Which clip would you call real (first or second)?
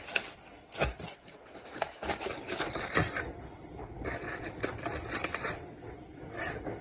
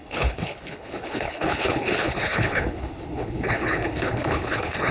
first